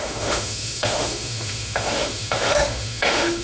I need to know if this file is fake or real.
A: fake